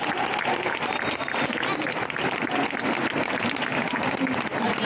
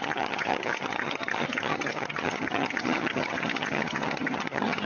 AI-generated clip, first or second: second